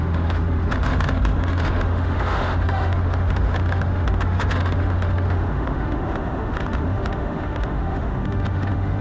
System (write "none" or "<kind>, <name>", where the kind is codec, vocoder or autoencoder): autoencoder, DAC-VAE